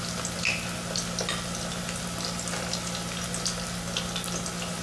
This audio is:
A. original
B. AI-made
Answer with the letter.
A